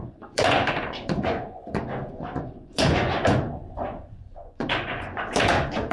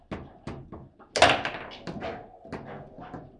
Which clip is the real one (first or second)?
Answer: second